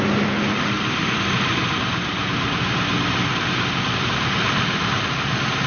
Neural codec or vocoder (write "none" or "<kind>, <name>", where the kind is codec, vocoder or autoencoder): none